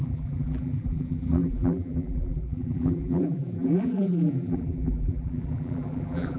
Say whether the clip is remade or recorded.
remade